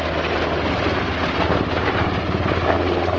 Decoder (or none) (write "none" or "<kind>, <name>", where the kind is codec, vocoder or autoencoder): none